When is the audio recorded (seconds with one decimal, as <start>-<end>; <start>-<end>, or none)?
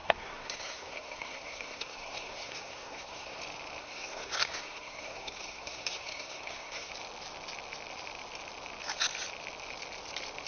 3.4-3.8; 6.9-10.5